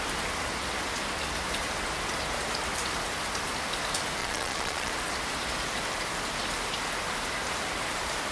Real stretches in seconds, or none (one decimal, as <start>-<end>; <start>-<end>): 0.0-4.2; 4.9-8.3